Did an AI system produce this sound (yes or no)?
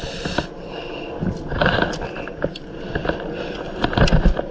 no